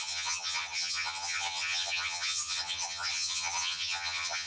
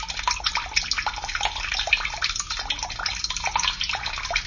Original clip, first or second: second